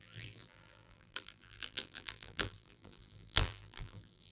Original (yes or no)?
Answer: no